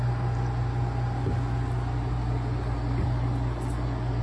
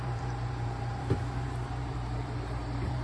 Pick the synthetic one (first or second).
second